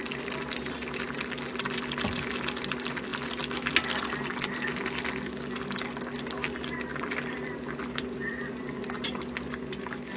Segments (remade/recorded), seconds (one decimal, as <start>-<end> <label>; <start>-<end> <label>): 0.0-6.9 recorded; 6.9-8.7 remade; 8.7-10.2 recorded